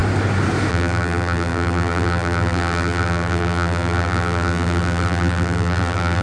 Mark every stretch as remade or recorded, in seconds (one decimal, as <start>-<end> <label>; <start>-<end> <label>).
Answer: 0.0-0.7 recorded; 0.7-6.2 remade